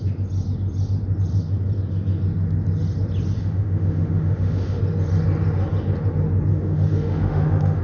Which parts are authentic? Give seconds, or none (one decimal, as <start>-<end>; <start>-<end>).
0.0-3.4; 4.8-6.5